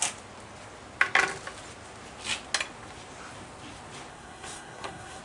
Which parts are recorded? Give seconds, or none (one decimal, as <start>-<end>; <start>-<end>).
0.0-4.1